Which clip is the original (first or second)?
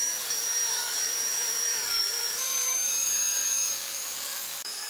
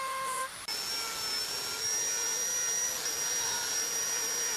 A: second